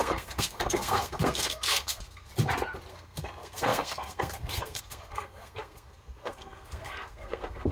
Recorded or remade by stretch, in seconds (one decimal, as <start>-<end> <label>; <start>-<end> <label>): 0.0-2.3 remade; 2.3-2.9 recorded; 2.9-7.7 remade